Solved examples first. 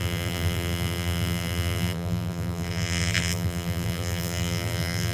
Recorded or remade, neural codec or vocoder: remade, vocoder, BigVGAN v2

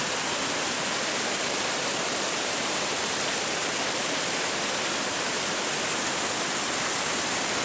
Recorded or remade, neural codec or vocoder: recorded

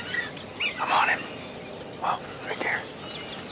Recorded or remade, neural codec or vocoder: recorded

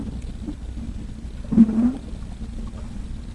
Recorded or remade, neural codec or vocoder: recorded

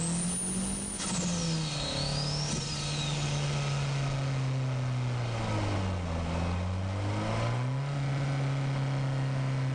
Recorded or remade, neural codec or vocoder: recorded